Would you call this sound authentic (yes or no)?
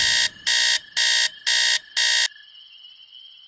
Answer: yes